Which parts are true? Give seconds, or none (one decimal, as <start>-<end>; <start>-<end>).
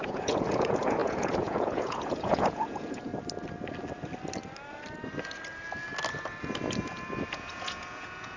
3.1-7.3